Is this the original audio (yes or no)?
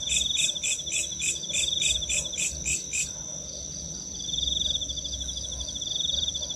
yes